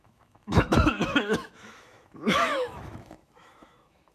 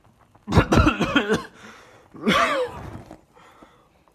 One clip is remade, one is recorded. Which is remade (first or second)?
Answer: first